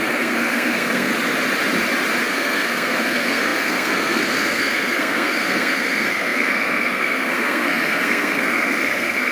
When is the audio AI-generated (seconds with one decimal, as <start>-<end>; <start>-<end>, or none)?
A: 0.0-1.1; 2.2-9.3